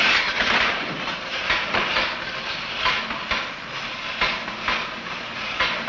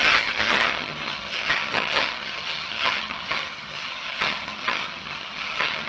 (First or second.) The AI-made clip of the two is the second